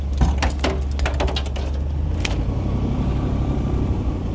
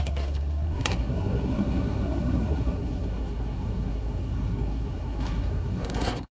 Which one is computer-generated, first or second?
second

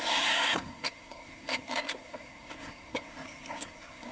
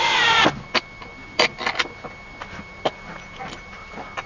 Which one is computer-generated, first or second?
first